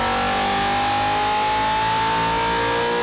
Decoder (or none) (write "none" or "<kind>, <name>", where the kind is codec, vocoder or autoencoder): none